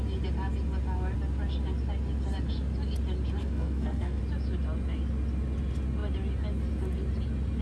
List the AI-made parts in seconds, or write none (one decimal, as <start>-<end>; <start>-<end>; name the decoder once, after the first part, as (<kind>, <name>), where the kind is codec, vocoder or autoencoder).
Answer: 3.4-4.2 (codec, SNAC)